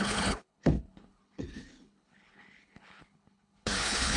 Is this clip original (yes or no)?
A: no